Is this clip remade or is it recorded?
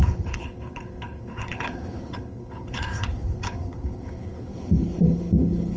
remade